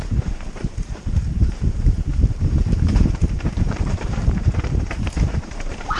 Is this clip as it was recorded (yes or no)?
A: no